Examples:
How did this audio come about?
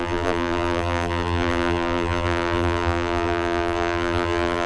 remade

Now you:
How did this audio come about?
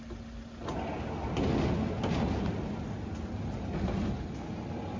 recorded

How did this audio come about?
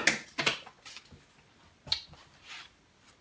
recorded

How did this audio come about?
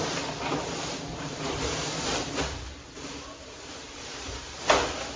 recorded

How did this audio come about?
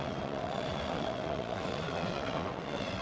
remade